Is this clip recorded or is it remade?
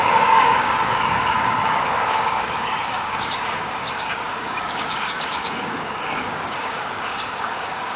remade